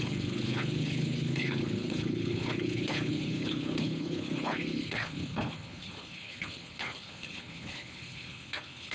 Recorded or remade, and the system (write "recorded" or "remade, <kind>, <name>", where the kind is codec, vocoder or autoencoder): remade, codec, HILCodec